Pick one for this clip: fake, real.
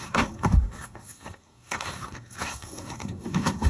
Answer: fake